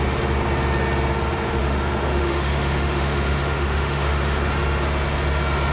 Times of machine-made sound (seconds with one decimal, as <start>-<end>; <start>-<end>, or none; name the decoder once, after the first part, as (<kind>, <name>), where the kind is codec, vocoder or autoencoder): 1.6-4.5 (autoencoder, DAC-VAE)